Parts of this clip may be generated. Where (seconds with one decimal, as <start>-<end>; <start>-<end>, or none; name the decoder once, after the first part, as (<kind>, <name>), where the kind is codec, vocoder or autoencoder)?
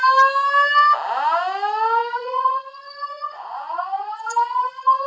2.0-5.1 (vocoder, Vocos)